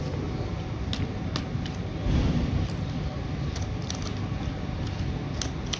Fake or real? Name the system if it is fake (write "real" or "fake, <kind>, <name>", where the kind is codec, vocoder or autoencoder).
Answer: real